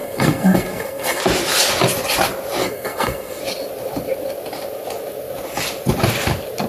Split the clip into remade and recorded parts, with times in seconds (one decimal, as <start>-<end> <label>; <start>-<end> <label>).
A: 0.0-1.2 remade; 1.2-2.6 recorded; 2.6-3.4 remade; 3.4-6.7 recorded